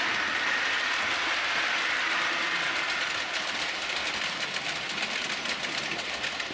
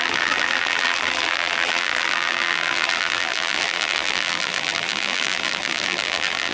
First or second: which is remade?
second